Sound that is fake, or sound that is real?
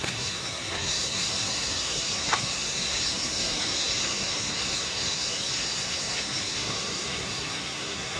fake